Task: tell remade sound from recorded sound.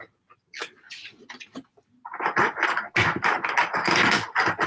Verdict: recorded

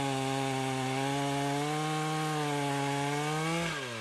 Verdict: recorded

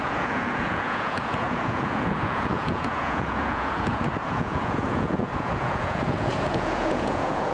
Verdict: remade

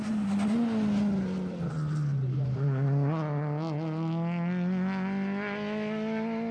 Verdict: recorded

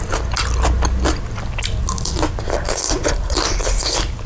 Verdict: recorded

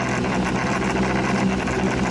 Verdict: recorded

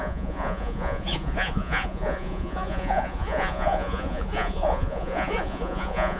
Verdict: remade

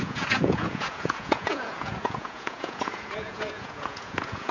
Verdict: remade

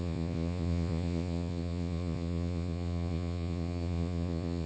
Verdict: remade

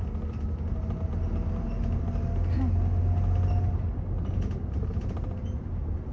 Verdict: recorded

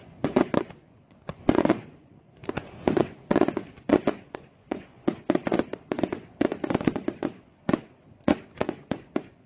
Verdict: remade